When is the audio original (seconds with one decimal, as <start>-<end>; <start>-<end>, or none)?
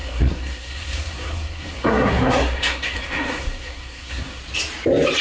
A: 4.4-5.2